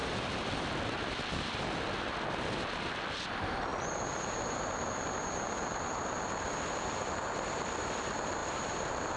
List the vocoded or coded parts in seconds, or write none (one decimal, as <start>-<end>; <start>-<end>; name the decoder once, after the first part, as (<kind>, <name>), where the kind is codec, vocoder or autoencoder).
0.0-0.5 (vocoder, BigVGAN v2); 8.4-9.2

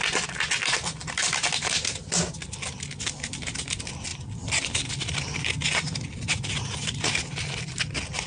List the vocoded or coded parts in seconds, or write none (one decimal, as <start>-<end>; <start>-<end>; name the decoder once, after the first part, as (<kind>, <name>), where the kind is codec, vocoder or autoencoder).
none

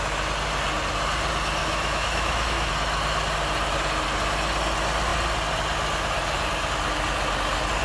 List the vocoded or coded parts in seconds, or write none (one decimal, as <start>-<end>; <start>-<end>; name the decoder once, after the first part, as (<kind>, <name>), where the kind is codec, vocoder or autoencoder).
1.6-2.7 (autoencoder, DAC-VAE)